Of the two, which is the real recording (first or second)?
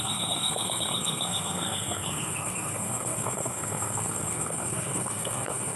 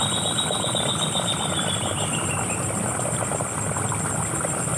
second